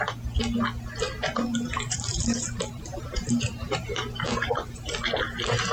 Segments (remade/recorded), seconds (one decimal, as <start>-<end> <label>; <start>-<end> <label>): 0.0-1.5 recorded; 1.5-4.9 remade; 4.9-5.7 recorded